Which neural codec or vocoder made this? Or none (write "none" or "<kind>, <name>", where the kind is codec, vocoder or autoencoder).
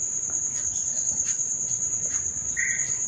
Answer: none